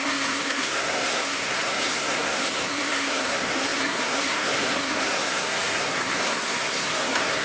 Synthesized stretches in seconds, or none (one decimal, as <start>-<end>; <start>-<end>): 0.0-7.4